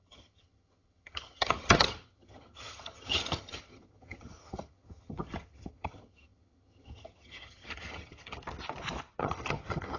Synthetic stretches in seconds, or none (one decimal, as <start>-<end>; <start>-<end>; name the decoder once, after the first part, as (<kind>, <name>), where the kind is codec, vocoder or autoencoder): 0.0-8.4 (vocoder, HiFi-GAN); 9.2-10.0